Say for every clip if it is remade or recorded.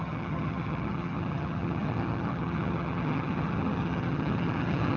remade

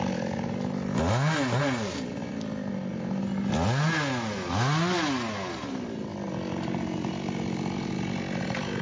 recorded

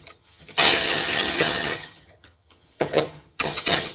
remade